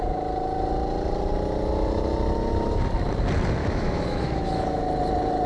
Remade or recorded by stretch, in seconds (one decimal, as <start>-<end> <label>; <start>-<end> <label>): 0.0-3.6 recorded; 3.6-4.8 remade; 4.8-5.5 recorded